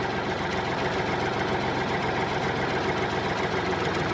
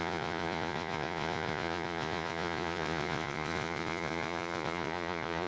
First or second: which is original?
first